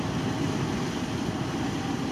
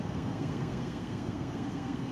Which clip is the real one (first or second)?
first